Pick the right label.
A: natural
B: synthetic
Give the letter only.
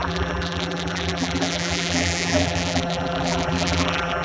B